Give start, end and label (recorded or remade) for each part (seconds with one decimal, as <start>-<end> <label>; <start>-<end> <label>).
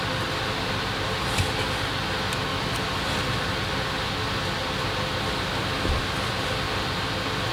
0.0-7.5 recorded